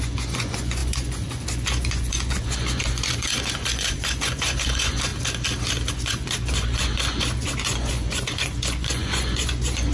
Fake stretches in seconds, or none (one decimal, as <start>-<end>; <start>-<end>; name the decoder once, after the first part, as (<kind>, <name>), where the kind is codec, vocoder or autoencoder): 0.0-5.1 (vocoder, Vocos); 5.9-9.9